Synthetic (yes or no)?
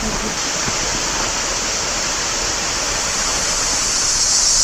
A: no